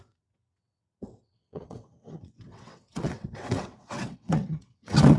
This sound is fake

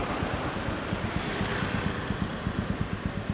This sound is real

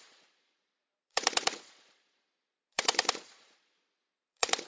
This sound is fake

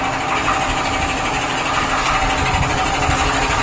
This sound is real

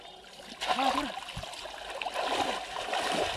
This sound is real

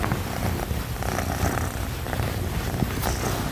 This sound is real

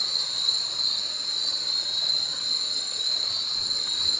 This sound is real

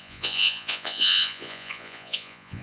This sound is fake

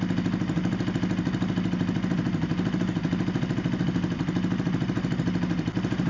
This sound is real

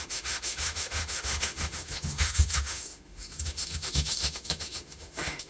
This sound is fake